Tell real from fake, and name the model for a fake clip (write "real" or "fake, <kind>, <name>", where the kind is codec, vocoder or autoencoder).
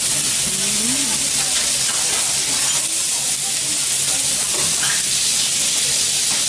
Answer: real